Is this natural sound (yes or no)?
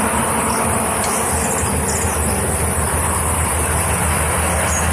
yes